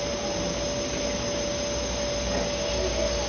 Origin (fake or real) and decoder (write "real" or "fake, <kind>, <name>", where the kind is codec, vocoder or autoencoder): real